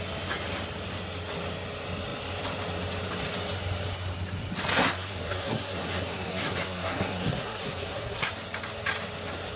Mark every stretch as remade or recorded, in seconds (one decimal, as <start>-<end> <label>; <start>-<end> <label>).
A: 0.0-4.7 recorded; 4.7-8.3 remade; 8.3-9.6 recorded